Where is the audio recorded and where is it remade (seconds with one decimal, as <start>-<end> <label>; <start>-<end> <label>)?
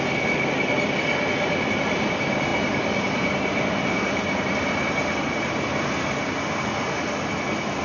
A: 0.0-7.8 recorded